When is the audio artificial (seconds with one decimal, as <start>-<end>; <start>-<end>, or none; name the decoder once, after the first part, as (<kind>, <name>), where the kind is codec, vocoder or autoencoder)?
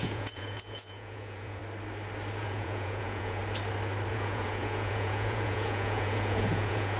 0.0-1.6 (vocoder, Vocos); 2.3-3.4; 4.1-7.0